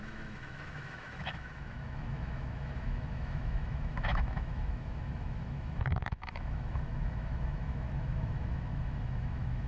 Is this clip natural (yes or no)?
no